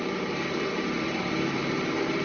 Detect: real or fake fake